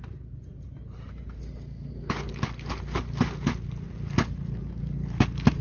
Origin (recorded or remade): recorded